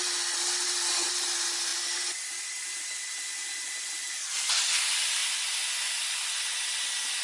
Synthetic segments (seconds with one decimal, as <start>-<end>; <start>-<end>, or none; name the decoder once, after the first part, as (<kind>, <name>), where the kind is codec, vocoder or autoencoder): 5.2-5.9 (vocoder, Vocos)